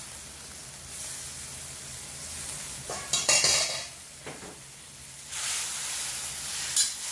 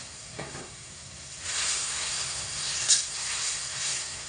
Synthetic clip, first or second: second